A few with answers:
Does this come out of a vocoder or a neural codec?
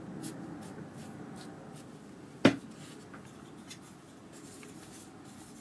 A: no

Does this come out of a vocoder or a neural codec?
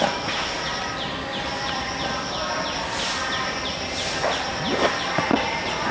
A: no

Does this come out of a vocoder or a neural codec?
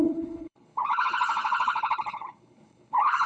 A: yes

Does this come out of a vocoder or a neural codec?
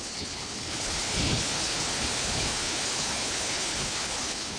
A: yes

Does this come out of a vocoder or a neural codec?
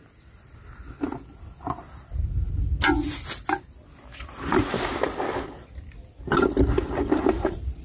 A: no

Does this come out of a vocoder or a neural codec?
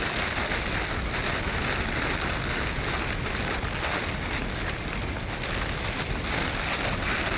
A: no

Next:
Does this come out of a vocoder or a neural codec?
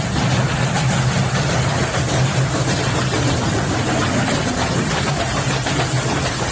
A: no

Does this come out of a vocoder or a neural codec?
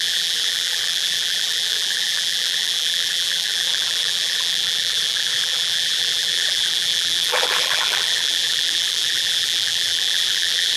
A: yes